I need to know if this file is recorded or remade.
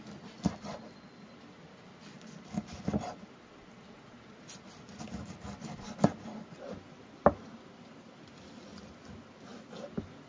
recorded